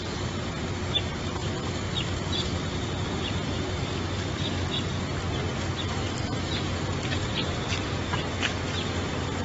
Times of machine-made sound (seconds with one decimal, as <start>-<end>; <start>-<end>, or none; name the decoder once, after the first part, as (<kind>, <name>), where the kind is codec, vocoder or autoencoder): 6.3-8.3 (vocoder, BigVGAN v2)